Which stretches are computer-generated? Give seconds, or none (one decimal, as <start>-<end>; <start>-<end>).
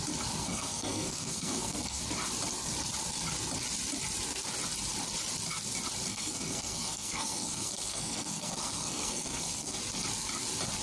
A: 0.4-2.0; 6.1-9.8